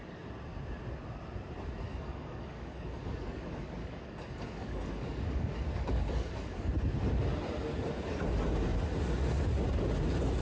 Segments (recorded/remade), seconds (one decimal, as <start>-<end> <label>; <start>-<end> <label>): 0.0-1.9 recorded; 1.9-6.7 remade; 6.7-10.4 recorded